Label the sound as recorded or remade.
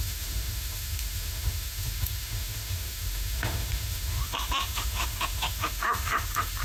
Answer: remade